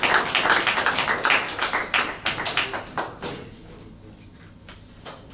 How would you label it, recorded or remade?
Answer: recorded